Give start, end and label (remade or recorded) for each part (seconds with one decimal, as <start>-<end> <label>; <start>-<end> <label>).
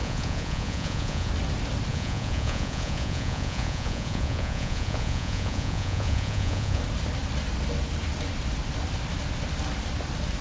0.0-1.3 remade; 1.3-1.9 recorded; 1.9-6.8 remade; 6.8-10.4 recorded